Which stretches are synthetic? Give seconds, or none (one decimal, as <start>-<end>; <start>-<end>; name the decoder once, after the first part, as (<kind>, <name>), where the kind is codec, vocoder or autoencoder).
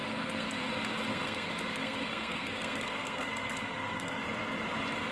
0.0-0.7 (codec, SNAC); 1.1-4.2